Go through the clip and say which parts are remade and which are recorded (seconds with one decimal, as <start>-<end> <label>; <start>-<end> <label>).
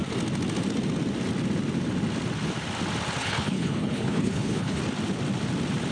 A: 0.0-3.2 recorded; 3.2-4.8 remade; 4.8-5.9 recorded